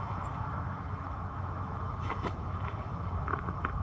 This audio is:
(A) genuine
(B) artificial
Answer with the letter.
B